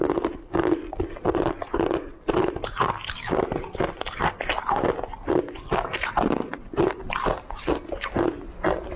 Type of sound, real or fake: real